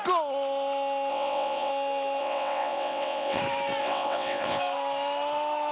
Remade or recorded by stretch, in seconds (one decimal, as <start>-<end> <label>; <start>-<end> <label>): 0.0-1.1 recorded; 1.1-1.7 remade; 1.7-2.2 recorded; 2.2-3.4 remade; 3.4-3.8 recorded; 3.8-4.6 remade; 4.6-5.7 recorded